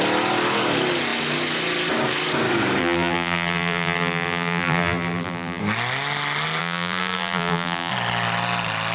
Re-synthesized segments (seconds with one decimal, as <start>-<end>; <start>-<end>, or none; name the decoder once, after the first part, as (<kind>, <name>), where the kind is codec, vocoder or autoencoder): 2.8-5.6 (vocoder, BigVGAN v2); 6.6-7.9